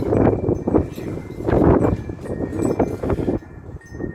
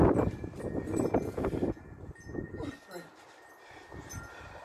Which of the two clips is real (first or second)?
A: first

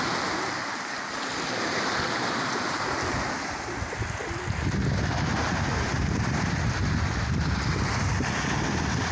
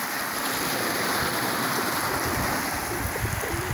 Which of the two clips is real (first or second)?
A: first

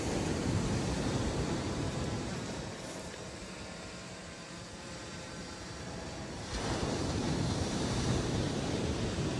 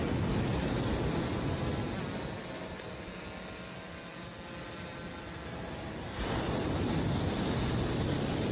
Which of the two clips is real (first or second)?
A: second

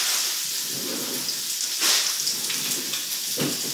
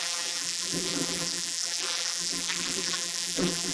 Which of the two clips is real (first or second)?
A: first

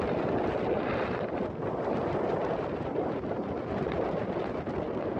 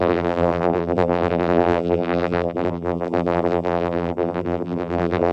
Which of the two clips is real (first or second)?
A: first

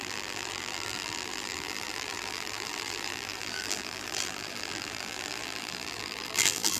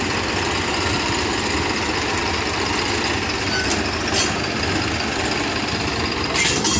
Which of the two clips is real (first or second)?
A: second